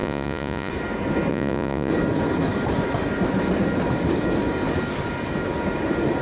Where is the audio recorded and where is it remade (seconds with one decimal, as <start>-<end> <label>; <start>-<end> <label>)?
0.0-0.7 remade; 0.7-1.3 recorded; 1.3-1.9 remade; 1.9-6.2 recorded